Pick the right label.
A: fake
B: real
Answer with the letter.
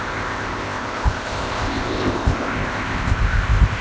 A